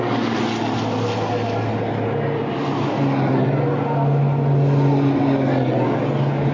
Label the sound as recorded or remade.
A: recorded